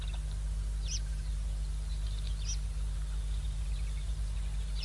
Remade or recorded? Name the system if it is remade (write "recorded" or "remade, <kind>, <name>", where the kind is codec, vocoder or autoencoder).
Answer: recorded